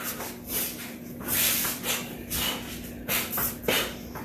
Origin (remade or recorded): recorded